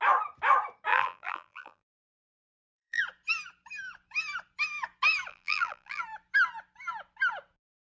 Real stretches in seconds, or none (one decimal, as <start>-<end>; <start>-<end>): 0.0-0.9; 3.0-5.3; 6.0-7.9